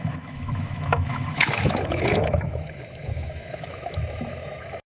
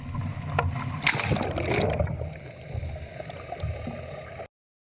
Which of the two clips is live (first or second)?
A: second